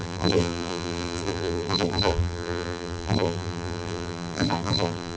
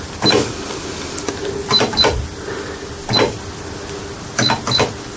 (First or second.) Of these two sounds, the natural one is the second